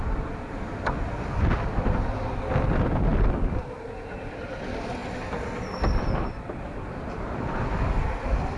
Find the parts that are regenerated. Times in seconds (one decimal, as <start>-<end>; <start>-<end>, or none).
3.1-3.8; 5.0-5.8